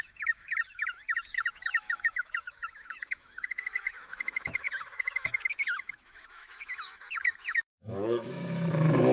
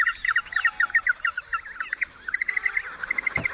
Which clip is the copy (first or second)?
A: first